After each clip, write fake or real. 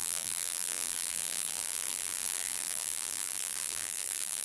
fake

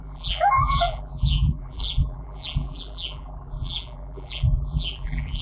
fake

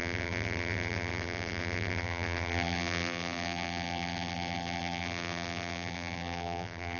fake